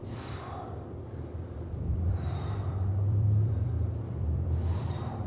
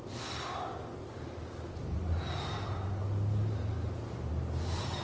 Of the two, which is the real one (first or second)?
second